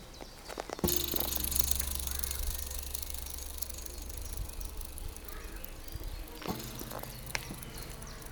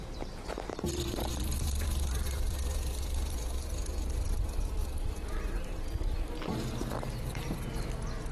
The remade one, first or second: second